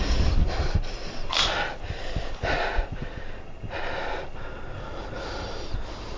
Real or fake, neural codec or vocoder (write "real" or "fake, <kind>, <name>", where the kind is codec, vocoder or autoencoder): real